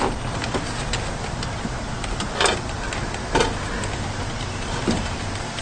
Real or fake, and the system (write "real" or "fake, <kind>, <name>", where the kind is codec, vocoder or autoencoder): real